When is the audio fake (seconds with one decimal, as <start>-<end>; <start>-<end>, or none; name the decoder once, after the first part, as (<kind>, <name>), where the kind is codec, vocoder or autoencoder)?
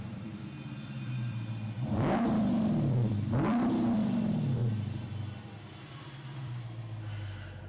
0.0-4.6 (vocoder, BigVGAN v2); 5.8-7.7